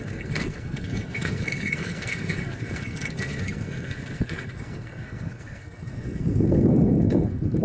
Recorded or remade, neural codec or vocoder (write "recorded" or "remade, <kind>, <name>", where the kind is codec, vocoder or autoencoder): remade, codec, SNAC